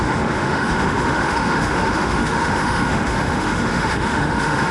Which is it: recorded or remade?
remade